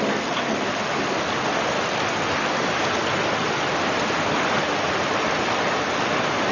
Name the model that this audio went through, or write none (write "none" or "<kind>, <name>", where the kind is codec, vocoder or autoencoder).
none